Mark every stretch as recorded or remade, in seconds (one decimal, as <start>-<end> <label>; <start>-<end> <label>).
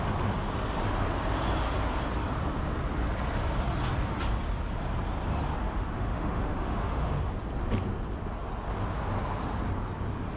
0.0-5.6 recorded; 5.6-7.3 remade; 7.3-10.4 recorded